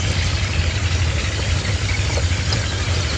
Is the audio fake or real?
real